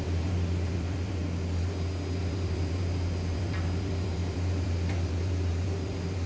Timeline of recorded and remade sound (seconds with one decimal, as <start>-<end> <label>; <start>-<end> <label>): 0.0-1.2 remade; 1.2-2.2 recorded; 2.2-6.3 remade